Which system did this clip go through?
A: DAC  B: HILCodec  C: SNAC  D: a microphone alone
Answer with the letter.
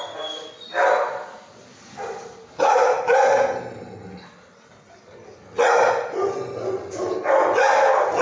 D